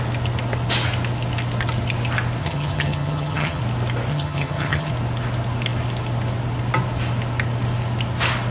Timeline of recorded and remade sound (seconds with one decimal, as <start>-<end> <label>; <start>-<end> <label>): 0.0-2.4 recorded; 2.4-3.6 remade; 3.6-4.1 recorded; 4.1-4.9 remade; 4.9-8.5 recorded